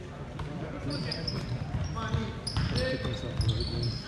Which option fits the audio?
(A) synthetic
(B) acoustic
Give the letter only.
B